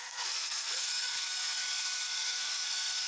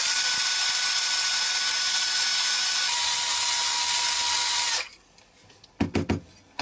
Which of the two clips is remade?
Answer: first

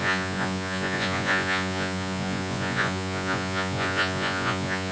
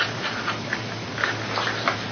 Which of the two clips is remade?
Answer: first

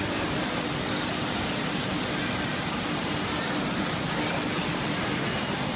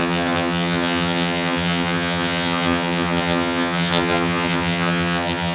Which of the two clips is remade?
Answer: second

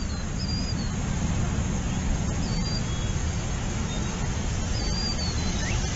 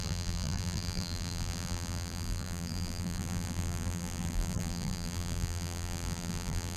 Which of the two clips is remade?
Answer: second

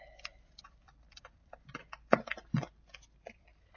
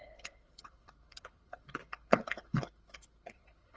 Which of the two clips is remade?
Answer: second